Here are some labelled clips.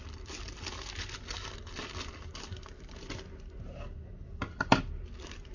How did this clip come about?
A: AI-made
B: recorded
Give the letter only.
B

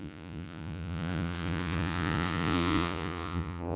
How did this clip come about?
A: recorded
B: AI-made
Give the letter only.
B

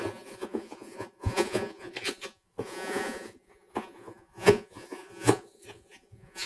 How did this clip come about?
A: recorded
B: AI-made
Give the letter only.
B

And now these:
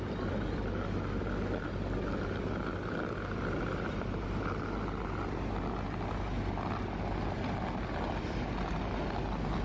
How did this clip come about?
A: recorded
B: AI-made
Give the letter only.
A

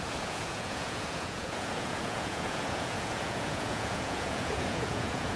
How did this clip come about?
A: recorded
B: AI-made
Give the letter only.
B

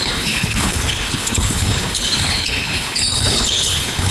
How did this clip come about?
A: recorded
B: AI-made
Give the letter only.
B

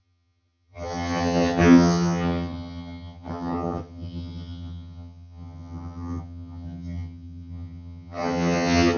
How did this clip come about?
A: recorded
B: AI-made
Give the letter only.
B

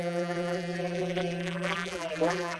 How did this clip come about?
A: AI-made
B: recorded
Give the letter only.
A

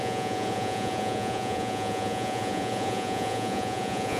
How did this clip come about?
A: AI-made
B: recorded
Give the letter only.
A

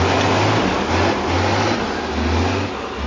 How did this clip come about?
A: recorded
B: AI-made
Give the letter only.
A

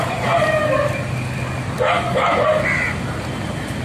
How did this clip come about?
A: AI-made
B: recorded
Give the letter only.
B